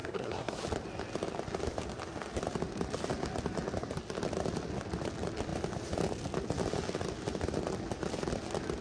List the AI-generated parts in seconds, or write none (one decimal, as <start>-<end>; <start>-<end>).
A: 0.0-0.6